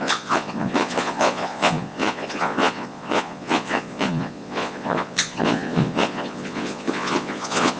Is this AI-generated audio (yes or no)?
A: yes